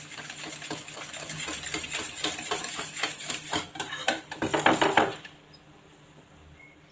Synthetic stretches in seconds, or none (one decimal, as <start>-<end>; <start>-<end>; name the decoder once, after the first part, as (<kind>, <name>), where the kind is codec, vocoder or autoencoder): 2.6-3.6 (autoencoder, DAC-VAE)